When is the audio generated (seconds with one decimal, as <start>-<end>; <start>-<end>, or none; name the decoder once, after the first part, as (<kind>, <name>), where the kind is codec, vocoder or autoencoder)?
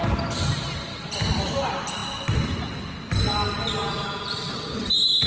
none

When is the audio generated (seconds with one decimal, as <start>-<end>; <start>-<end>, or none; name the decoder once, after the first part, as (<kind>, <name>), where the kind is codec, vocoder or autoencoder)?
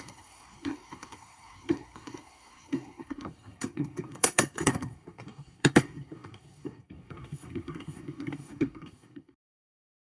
0.0-10.0 (codec, SNAC)